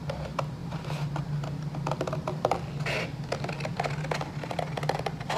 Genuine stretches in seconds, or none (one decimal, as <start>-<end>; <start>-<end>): 0.0-5.4